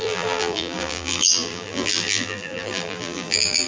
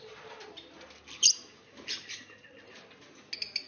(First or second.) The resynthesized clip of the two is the first